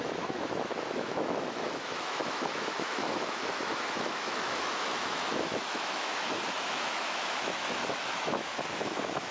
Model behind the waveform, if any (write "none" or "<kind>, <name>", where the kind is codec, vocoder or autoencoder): autoencoder, DAC-VAE